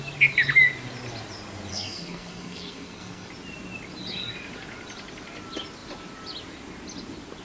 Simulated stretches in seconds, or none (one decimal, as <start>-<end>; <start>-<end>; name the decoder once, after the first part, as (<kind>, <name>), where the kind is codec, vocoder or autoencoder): 1.7-3.3 (codec, SNAC)